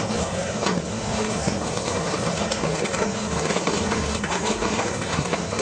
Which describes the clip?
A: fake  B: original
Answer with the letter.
A